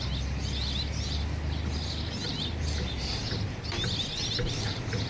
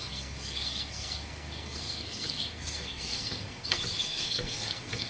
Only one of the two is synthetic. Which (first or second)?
second